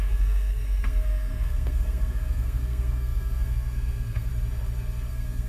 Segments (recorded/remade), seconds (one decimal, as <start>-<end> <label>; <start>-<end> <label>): 0.0-4.3 remade; 4.3-5.1 recorded; 5.1-5.5 remade